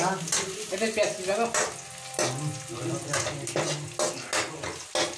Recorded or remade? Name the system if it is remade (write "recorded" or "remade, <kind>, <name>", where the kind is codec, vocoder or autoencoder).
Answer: recorded